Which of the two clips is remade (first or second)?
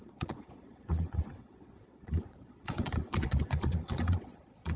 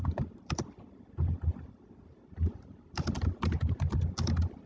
first